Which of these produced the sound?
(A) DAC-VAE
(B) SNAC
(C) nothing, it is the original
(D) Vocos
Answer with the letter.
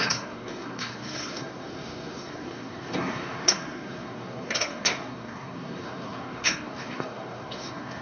B